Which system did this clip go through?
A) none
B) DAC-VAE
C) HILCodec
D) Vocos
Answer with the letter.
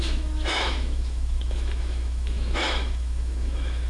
B